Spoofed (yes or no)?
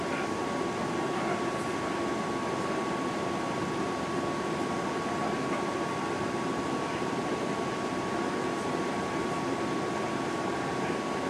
no